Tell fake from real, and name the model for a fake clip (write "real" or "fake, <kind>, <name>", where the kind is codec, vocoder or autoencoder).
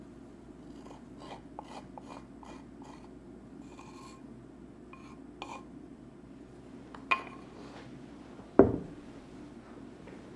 real